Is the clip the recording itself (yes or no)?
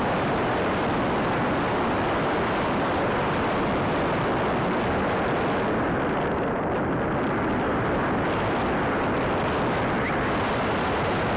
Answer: yes